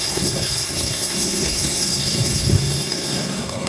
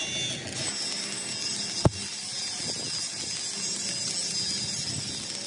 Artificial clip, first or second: first